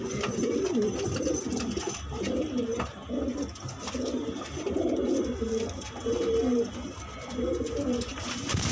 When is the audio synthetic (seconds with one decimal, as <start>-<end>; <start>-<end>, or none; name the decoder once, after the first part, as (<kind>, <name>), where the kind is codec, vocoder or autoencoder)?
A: none